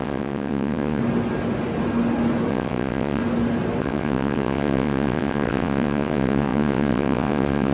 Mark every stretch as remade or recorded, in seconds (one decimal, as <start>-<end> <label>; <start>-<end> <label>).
0.0-1.0 remade; 1.0-2.5 recorded; 2.5-3.2 remade; 3.2-3.8 recorded; 3.8-7.7 remade